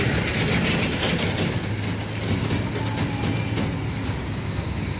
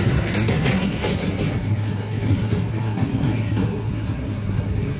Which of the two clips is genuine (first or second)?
first